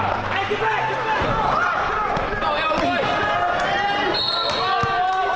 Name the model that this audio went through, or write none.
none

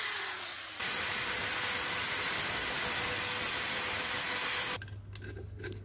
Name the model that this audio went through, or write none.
none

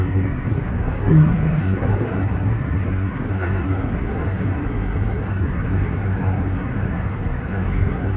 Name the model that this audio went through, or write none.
codec, SNAC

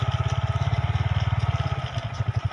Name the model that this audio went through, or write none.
none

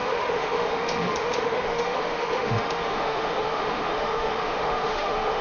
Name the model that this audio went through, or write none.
autoencoder, DAC-VAE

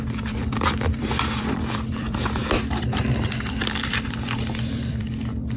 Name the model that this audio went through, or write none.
vocoder, BigVGAN v2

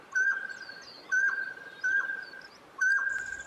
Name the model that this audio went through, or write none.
none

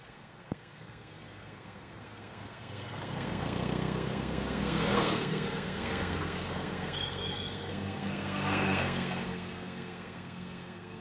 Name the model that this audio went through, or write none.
codec, SNAC